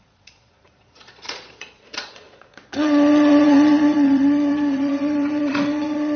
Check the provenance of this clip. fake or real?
fake